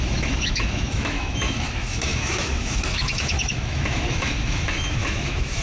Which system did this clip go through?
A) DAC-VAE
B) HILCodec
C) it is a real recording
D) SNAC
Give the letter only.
A